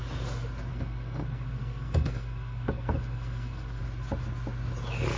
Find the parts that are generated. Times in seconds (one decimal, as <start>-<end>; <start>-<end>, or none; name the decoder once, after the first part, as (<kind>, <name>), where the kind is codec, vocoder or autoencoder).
0.7-3.8 (codec, SNAC)